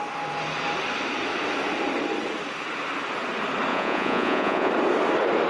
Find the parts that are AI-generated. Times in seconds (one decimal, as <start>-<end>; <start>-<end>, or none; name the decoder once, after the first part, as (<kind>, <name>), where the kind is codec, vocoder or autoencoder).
3.7-4.7 (vocoder, Vocos)